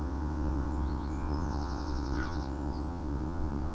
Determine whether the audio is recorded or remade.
remade